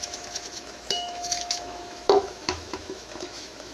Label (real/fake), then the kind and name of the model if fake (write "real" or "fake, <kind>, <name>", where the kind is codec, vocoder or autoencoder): fake, autoencoder, DAC-VAE